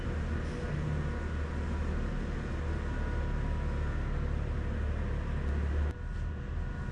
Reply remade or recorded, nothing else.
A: recorded